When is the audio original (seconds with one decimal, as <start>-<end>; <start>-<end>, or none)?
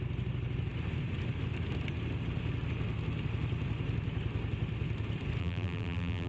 0.0-5.4